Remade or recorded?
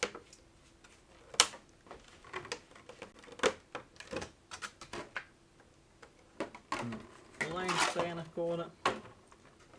recorded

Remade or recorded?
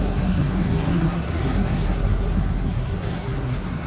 remade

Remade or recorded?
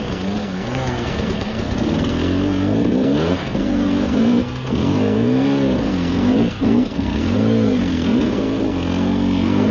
remade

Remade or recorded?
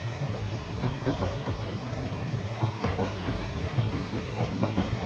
remade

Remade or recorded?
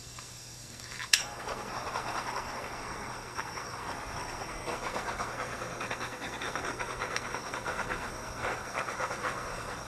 remade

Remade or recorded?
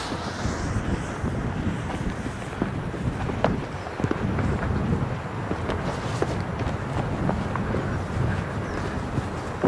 recorded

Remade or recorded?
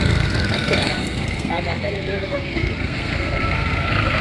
remade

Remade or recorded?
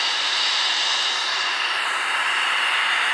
recorded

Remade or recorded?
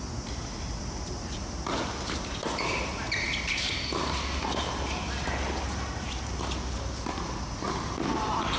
recorded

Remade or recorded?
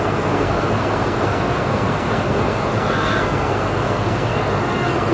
remade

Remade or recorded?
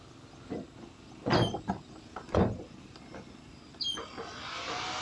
recorded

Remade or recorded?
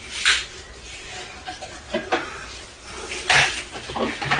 recorded